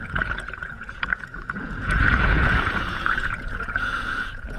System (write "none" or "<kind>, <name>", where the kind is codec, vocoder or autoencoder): vocoder, Vocos